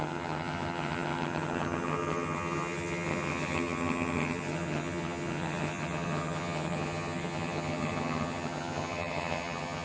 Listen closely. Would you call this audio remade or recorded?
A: remade